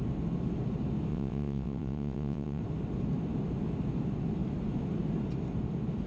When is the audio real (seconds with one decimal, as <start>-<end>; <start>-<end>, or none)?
0.0-1.1; 2.6-6.1